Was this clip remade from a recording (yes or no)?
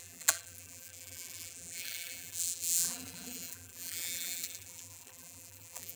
yes